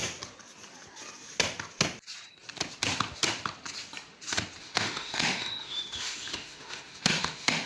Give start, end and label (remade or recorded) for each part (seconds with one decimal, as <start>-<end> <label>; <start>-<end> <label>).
0.0-4.6 recorded; 4.6-7.7 remade